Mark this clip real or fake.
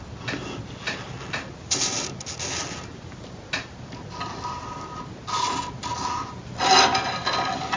real